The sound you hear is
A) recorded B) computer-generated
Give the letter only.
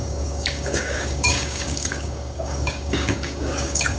B